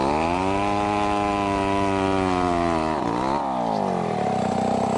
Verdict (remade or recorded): recorded